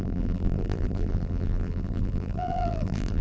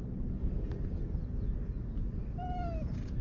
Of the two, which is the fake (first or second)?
first